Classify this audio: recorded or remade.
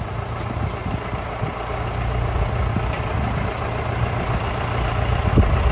recorded